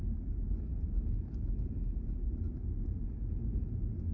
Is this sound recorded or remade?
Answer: recorded